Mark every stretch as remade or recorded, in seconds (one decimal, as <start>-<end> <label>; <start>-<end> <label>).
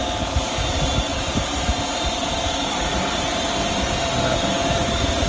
0.0-1.1 recorded; 1.1-4.3 remade; 4.3-5.3 recorded